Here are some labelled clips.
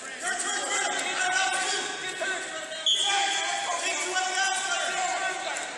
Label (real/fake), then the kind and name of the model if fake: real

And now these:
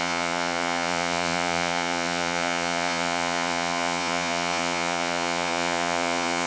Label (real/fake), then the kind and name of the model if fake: fake, vocoder, Vocos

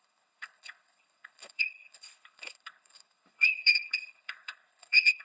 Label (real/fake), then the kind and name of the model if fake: fake, codec, HILCodec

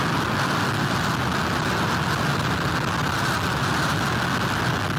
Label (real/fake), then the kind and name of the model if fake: real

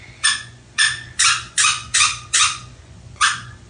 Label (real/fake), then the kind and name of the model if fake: fake, vocoder, Vocos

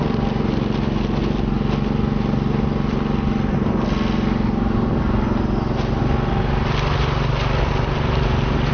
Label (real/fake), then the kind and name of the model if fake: real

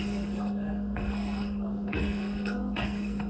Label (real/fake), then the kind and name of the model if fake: fake, codec, SNAC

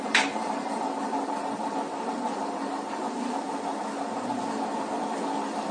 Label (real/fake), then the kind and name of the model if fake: real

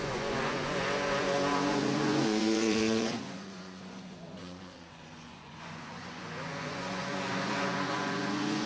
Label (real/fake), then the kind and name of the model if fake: fake, vocoder, Vocos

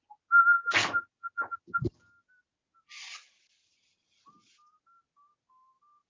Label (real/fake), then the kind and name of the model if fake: real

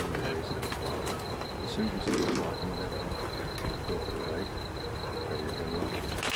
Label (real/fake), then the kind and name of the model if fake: real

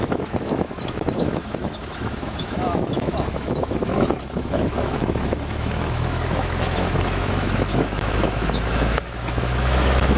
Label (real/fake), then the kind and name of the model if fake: fake, autoencoder, DAC-VAE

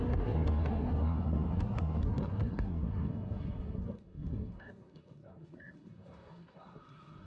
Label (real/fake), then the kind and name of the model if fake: fake, codec, SNAC